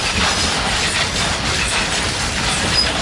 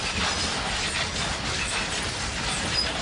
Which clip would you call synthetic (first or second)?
first